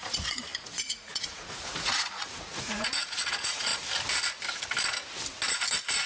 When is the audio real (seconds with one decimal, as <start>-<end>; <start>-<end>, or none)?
3.7-6.1